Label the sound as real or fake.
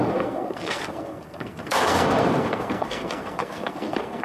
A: fake